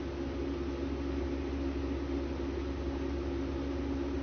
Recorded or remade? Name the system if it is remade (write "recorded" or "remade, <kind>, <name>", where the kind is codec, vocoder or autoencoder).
recorded